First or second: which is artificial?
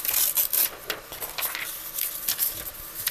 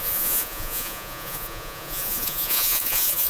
second